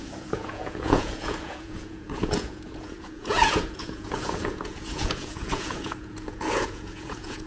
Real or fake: fake